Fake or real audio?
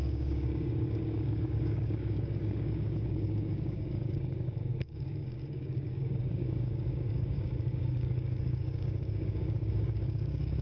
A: fake